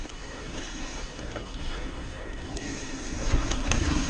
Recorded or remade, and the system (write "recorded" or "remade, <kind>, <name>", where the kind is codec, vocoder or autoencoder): remade, codec, SNAC